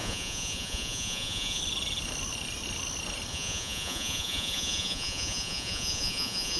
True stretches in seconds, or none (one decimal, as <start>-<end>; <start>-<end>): 1.6-3.3